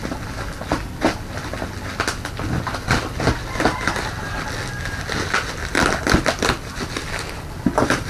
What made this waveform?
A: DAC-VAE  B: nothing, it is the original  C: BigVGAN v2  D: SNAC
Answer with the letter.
B